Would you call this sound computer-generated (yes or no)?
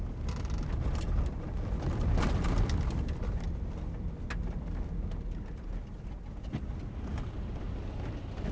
no